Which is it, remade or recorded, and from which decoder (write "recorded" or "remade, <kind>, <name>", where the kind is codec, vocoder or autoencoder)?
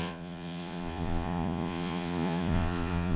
remade, vocoder, Vocos